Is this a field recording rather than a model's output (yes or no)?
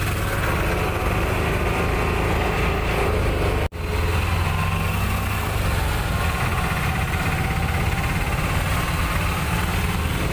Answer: yes